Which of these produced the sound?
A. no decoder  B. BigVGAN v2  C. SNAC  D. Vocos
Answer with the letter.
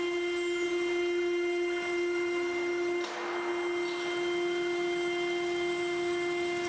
A